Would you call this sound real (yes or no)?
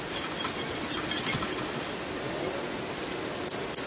yes